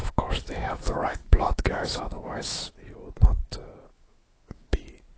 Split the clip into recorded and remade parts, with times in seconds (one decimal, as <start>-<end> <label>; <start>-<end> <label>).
0.0-2.7 remade; 2.7-3.9 recorded; 3.9-4.8 remade; 4.8-5.2 recorded